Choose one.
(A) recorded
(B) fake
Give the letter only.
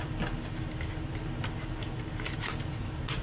A